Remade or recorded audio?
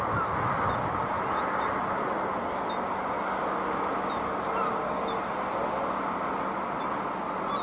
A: recorded